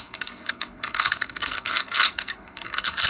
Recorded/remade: remade